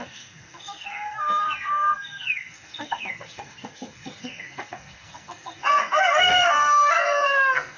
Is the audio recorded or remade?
remade